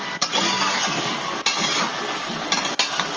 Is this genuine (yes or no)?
yes